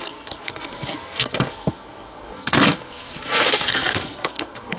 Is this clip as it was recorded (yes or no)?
no